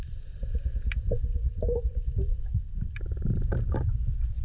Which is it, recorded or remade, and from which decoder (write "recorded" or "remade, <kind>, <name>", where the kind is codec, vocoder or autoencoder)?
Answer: remade, vocoder, BigVGAN v2